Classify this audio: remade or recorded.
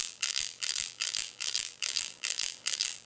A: remade